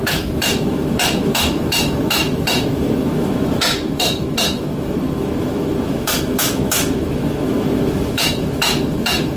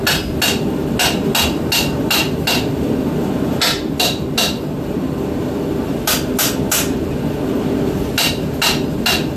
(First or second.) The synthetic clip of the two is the first